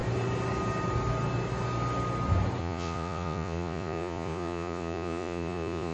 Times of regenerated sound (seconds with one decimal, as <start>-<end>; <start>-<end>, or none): 2.6-5.9